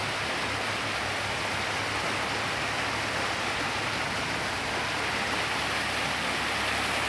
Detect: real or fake real